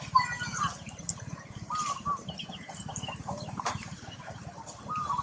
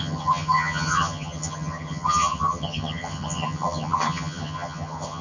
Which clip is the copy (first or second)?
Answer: second